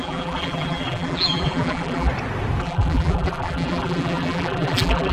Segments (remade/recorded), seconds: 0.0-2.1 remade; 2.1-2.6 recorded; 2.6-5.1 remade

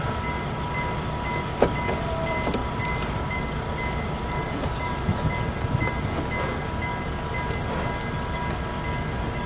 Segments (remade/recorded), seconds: 0.0-2.6 recorded; 2.6-3.4 remade; 3.4-4.4 recorded; 4.4-4.9 remade; 4.9-9.5 recorded

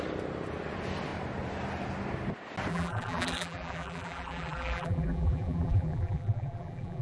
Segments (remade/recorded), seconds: 0.0-2.7 recorded; 2.7-7.0 remade

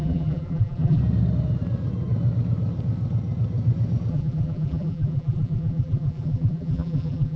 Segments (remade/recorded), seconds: 0.0-1.0 remade; 1.0-4.1 recorded; 4.1-7.4 remade

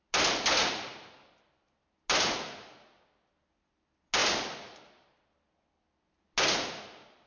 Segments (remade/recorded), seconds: 0.0-7.3 recorded

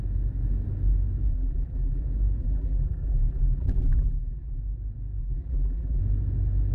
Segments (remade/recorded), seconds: 0.0-1.3 recorded; 1.3-2.0 remade; 2.0-2.4 recorded; 2.4-4.6 remade; 4.6-5.2 recorded; 5.2-6.0 remade; 6.0-6.7 recorded

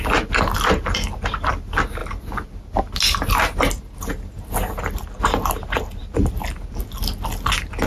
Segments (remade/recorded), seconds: 0.0-2.0 recorded; 2.0-2.8 remade; 2.8-7.9 recorded

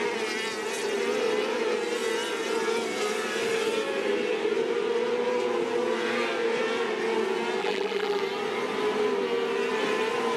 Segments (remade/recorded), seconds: 0.0-7.6 recorded; 7.6-8.2 remade; 8.2-10.4 recorded